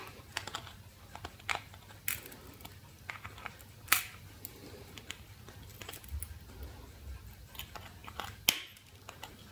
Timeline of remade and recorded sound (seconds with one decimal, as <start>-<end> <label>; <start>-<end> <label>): 0.0-9.5 recorded